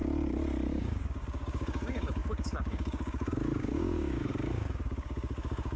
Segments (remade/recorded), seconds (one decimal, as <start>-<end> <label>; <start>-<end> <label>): 0.0-0.7 recorded; 0.7-5.8 remade